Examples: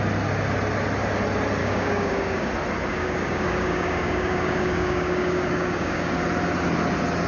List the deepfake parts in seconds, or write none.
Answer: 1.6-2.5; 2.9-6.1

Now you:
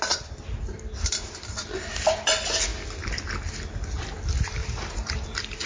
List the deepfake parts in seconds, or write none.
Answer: 4.6-5.7

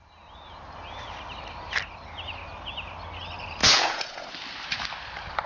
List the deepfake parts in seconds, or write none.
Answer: 3.6-4.3

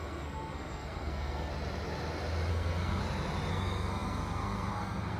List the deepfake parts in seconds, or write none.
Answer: 0.0-1.5; 2.5-3.0; 3.5-5.2

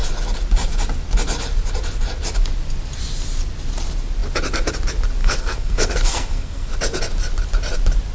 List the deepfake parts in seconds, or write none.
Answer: 5.2-6.7

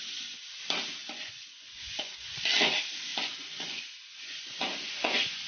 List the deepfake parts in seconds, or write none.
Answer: 1.0-2.3; 3.1-5.5

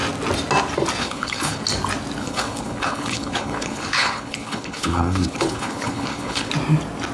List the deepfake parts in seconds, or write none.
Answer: 1.0-1.6; 2.2-6.5